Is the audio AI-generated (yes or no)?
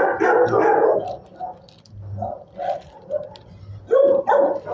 no